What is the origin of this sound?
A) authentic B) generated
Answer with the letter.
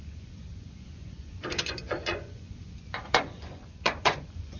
B